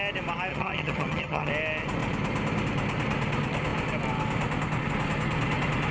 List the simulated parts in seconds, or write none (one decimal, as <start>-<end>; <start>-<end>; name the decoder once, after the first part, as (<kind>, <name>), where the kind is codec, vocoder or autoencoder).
0.5-1.5 (vocoder, HiFi-GAN)